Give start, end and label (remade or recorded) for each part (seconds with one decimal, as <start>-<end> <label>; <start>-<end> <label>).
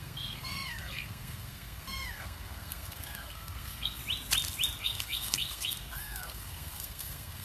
0.0-4.0 remade; 4.0-4.8 recorded; 4.8-7.4 remade